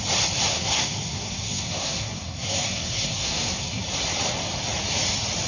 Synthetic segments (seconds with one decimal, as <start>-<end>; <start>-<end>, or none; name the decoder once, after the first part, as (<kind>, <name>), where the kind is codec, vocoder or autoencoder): 0.5-3.8 (codec, SNAC)